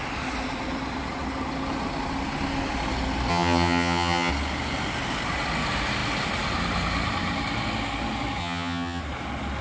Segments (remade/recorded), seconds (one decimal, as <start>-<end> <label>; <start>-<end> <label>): 0.0-3.3 recorded; 3.3-4.3 remade; 4.3-8.4 recorded; 8.4-9.0 remade; 9.0-9.6 recorded